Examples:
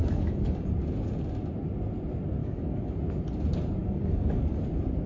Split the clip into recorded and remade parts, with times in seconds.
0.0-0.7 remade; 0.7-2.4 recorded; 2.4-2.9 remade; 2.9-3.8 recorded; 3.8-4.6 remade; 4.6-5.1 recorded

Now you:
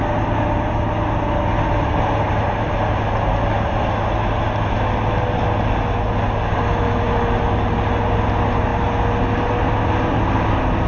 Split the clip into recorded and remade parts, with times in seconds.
0.0-10.9 recorded

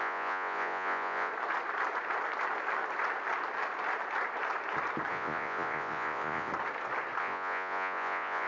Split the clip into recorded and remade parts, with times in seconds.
0.0-1.3 remade; 1.3-5.1 recorded; 5.1-6.5 remade; 6.5-7.2 recorded; 7.2-8.5 remade